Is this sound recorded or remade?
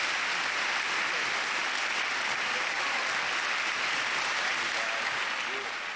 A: recorded